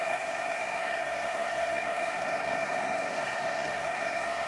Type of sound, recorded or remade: remade